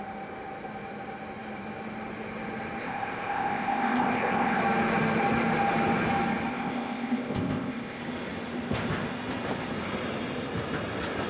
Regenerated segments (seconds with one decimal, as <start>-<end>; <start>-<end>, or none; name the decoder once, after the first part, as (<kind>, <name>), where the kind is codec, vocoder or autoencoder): 2.8-4.6 (codec, ZipCodec); 6.5-8.0